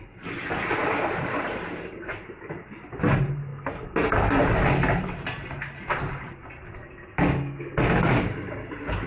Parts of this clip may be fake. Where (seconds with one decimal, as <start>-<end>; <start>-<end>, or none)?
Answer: 0.0-3.5; 5.0-5.4; 6.0-6.4; 7.8-9.1